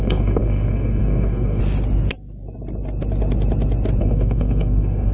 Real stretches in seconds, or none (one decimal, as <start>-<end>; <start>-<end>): 1.6-4.0